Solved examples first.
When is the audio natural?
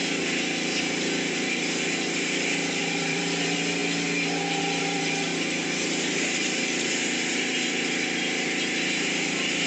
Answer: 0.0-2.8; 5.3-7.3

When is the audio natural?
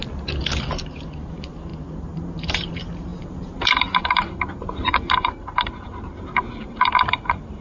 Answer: 0.0-0.8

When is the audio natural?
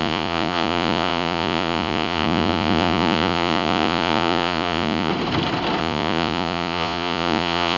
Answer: 5.1-5.8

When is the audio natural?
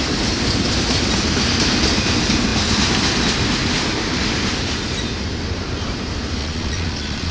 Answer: 0.0-6.4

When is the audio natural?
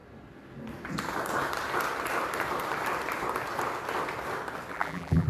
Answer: 0.0-4.7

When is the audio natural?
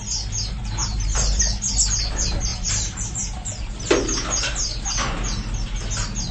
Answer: 0.0-0.8; 1.4-2.5; 5.2-6.3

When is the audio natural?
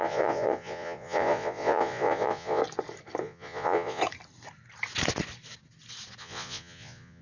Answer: 2.6-3.2; 4.0-6.2